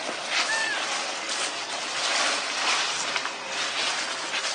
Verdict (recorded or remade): recorded